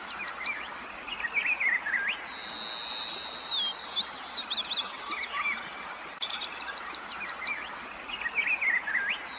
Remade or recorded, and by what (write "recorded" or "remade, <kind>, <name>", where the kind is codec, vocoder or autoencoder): recorded